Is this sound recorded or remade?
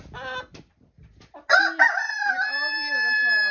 recorded